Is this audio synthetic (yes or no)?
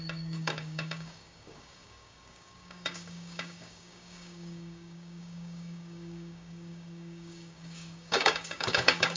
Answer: yes